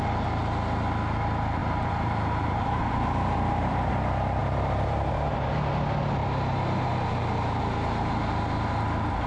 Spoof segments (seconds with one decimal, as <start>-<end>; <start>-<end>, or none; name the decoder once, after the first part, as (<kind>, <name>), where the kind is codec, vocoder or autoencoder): 1.6-3.9 (vocoder, BigVGAN v2); 4.4-5.1